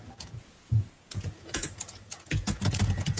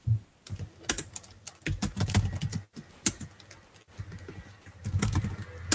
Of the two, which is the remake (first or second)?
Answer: first